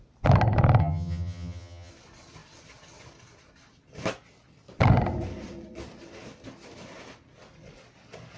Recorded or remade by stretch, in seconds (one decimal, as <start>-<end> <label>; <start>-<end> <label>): 0.0-0.8 recorded; 0.8-1.9 remade; 1.9-8.4 recorded